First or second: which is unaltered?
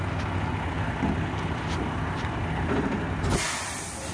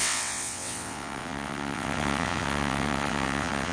first